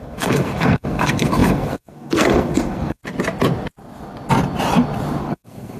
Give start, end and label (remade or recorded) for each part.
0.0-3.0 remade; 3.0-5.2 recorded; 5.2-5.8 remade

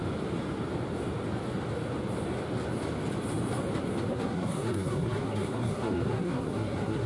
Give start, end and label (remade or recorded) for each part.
0.0-4.1 recorded; 4.1-7.1 remade

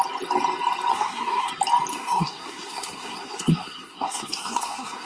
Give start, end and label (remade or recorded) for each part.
0.0-0.9 recorded; 0.9-1.5 remade; 1.5-1.9 recorded; 1.9-5.1 remade

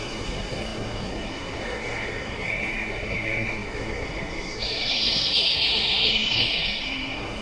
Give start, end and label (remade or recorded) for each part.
0.0-7.4 remade

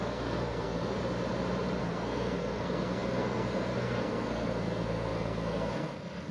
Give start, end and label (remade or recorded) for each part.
0.0-1.0 remade; 1.0-1.8 recorded; 1.8-6.3 remade

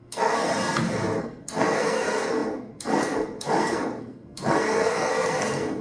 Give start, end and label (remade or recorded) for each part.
0.0-0.5 remade; 0.5-1.2 recorded; 1.2-5.8 remade

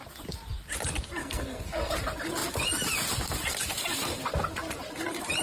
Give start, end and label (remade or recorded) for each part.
0.0-1.2 recorded; 1.2-1.9 remade; 1.9-5.4 recorded

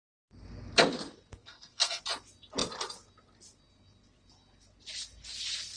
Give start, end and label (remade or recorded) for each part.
0.0-1.4 recorded; 1.4-2.0 remade; 2.0-5.8 recorded